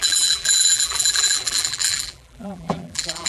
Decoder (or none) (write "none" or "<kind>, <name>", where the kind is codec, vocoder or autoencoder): vocoder, BigVGAN v2